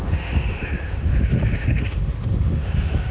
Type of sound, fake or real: fake